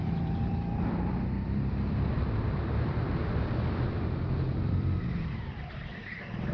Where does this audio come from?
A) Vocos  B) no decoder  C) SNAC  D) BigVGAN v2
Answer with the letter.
D